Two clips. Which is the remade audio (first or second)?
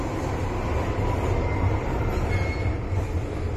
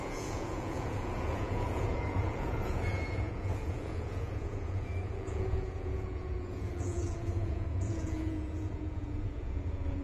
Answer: second